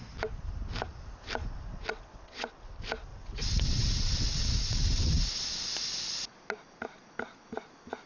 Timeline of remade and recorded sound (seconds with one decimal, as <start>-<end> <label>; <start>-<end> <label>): 0.0-1.7 recorded; 1.7-2.7 remade; 2.7-3.1 recorded; 3.1-5.3 remade; 5.3-8.1 recorded